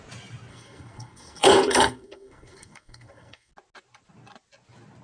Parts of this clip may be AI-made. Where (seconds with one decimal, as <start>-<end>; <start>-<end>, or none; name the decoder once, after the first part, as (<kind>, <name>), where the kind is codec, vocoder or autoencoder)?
0.5-3.5 (codec, SNAC)